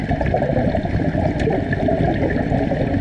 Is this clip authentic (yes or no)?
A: yes